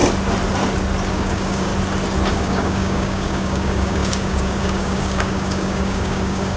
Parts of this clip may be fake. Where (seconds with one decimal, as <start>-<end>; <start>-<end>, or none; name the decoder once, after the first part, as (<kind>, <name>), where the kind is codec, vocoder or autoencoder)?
1.1-1.7 (codec, DAC); 2.3-6.6